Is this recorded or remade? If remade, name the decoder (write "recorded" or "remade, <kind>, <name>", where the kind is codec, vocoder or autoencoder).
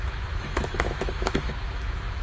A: remade, autoencoder, DAC-VAE